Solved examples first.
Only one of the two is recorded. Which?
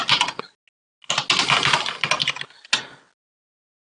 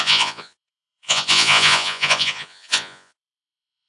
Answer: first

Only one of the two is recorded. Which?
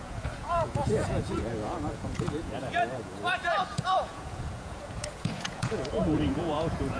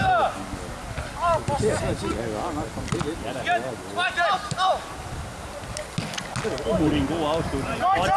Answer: second